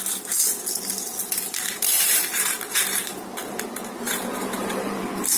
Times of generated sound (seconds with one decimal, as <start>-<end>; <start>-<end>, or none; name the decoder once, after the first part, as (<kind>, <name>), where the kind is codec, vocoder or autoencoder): 1.9-5.0 (vocoder, BigVGAN v2)